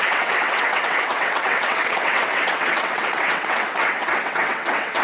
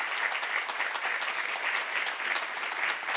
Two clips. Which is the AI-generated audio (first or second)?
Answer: first